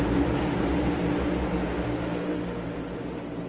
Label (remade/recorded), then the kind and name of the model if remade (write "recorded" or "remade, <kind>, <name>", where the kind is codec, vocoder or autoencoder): recorded